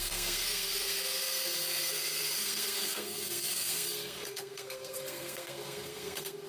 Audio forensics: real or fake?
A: fake